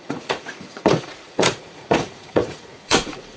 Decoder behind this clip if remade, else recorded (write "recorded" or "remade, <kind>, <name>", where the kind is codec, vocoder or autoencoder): remade, vocoder, Vocos